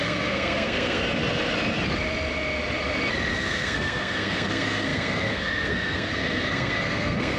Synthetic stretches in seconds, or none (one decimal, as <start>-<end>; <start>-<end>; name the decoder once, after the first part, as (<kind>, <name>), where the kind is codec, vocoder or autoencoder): 0.0-1.0 (codec, SNAC); 3.3-7.4